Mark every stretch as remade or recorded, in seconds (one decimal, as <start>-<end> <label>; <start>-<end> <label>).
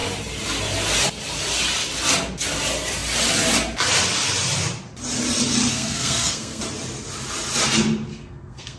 0.0-5.7 recorded; 5.7-6.6 remade; 6.6-8.1 recorded; 8.1-8.8 remade